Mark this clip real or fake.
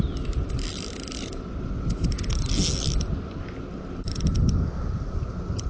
real